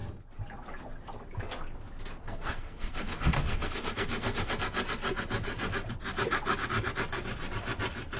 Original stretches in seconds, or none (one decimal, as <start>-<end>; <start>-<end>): 0.0-2.2; 4.5-8.2

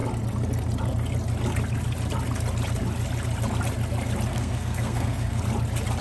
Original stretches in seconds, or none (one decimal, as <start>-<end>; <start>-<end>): 0.0-4.3; 5.4-6.0

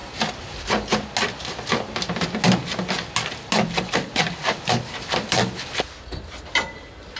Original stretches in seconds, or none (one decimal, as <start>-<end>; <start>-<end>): 0.0-7.2

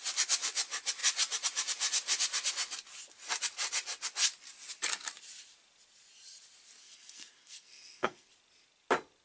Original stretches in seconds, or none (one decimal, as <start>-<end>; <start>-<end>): 0.0-6.8; 8.3-9.2

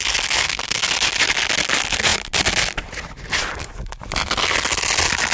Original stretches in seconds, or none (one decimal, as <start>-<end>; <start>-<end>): 0.0-0.4; 0.9-5.3

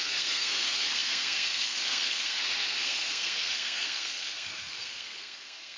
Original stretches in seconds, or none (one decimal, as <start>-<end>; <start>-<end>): none

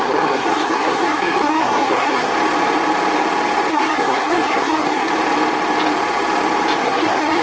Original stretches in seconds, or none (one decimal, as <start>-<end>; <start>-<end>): 2.3-3.7; 5.1-6.8

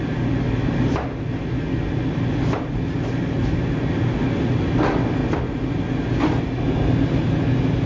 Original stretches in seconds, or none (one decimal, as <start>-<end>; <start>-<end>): 0.0-7.9